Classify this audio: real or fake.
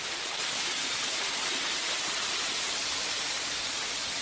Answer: real